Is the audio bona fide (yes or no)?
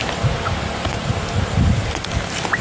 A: yes